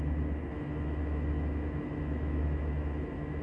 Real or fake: fake